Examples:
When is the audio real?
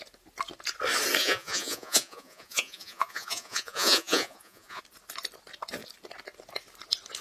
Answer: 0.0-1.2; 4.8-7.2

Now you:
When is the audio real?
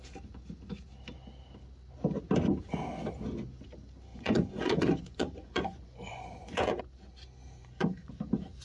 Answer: 0.0-4.1; 6.8-7.6; 8.1-8.6